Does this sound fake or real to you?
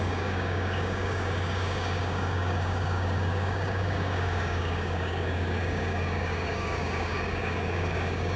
fake